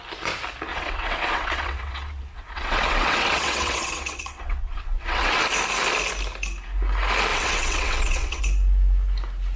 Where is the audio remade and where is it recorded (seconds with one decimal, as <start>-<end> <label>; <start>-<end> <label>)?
0.0-0.7 recorded; 0.7-5.4 remade; 5.4-7.3 recorded; 7.3-8.4 remade; 8.4-9.6 recorded